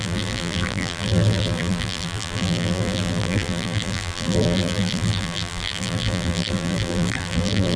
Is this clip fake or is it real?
fake